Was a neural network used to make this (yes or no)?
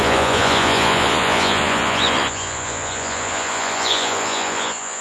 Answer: yes